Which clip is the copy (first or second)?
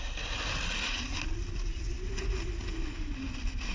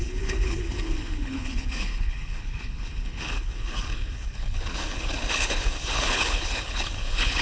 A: second